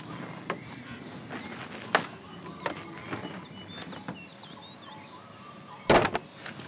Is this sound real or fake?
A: real